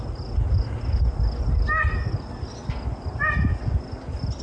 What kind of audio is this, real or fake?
real